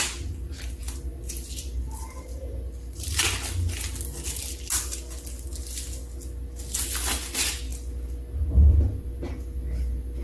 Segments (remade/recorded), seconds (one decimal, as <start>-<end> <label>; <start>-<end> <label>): 0.0-10.2 recorded